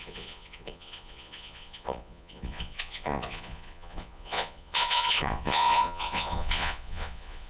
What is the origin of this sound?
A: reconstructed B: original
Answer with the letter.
A